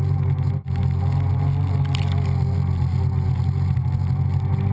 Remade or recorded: recorded